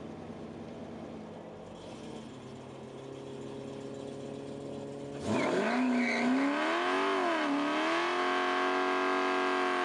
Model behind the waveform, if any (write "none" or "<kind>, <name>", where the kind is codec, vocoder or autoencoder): none